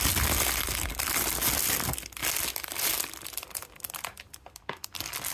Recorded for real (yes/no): yes